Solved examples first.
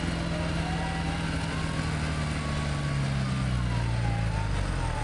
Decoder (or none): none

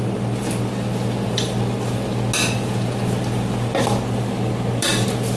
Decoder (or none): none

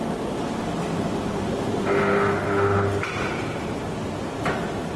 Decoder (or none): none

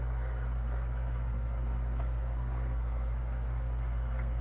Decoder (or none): codec, SNAC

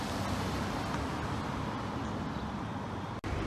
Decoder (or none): none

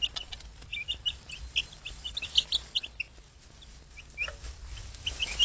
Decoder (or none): none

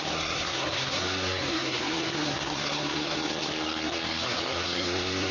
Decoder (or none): codec, SNAC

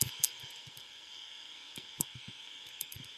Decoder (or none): codec, SNAC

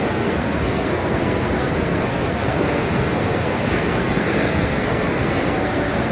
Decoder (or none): codec, SNAC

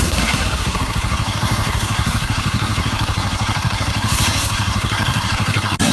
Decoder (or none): codec, SNAC